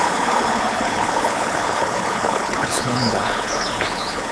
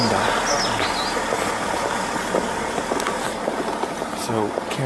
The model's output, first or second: first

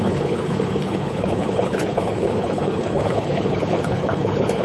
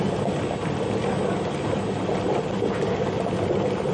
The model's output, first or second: first